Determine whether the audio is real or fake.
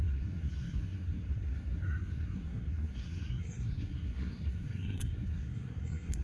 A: fake